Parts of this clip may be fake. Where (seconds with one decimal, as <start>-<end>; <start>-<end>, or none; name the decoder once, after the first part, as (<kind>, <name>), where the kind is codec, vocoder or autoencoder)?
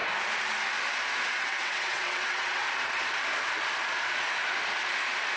1.2-2.6 (vocoder, WaveNeXt)